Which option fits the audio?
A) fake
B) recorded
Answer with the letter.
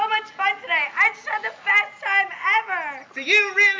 B